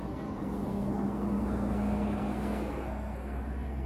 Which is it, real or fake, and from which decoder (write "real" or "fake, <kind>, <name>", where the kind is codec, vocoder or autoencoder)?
fake, codec, SNAC